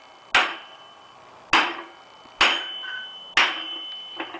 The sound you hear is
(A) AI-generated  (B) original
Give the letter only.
B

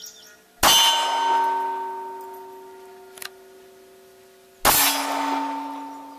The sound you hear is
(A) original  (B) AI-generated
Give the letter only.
A